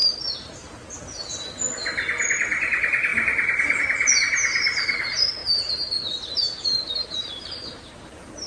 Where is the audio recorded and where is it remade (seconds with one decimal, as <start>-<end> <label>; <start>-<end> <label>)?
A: 0.0-1.0 remade; 1.0-8.5 recorded